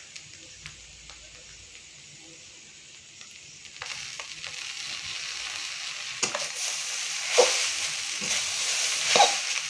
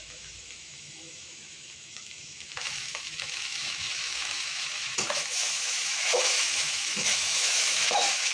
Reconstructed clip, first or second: second